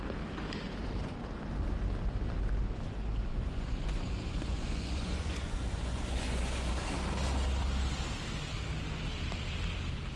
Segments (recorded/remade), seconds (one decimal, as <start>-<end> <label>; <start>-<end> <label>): 0.0-3.3 recorded; 3.3-6.7 remade; 6.7-10.2 recorded